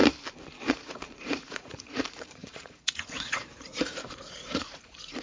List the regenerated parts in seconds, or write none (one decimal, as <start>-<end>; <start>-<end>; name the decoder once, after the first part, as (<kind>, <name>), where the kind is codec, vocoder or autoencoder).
0.7-5.2 (vocoder, Vocos)